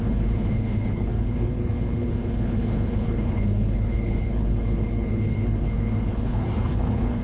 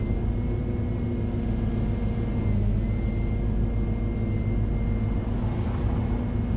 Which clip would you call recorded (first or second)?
second